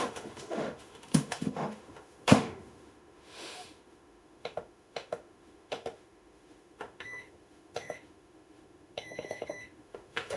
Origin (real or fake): fake